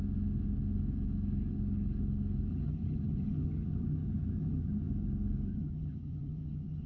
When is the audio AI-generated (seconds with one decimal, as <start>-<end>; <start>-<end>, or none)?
2.5-4.9; 5.5-6.9